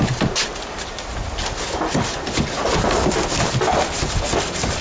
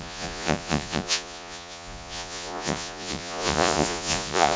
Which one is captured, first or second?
first